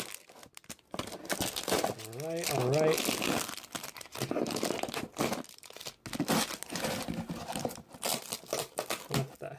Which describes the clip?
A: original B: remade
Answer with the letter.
A